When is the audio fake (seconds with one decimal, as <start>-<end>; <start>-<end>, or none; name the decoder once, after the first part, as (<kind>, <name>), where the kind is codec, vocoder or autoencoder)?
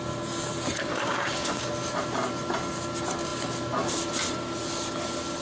0.9-1.7 (codec, DAC)